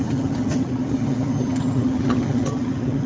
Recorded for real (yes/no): no